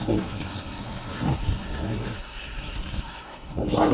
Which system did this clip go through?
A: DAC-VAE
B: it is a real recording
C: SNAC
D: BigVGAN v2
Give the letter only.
C